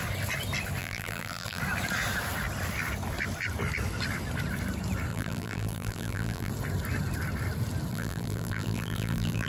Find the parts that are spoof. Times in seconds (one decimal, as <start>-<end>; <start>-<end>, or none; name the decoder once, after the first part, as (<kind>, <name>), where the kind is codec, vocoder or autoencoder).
0.8-1.6 (vocoder, BigVGAN v2); 5.1-6.5; 7.9-9.5